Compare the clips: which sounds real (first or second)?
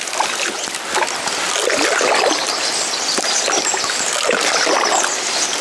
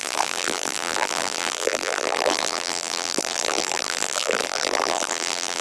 first